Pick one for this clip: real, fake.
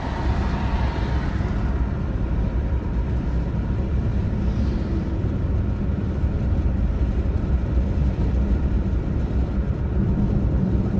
fake